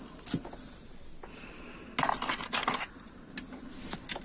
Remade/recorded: recorded